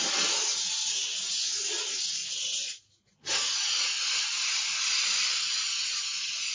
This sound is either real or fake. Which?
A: real